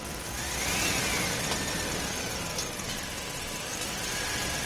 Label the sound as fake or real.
real